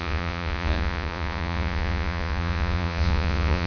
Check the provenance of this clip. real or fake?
fake